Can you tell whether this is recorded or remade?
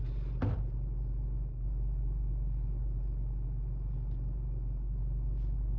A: recorded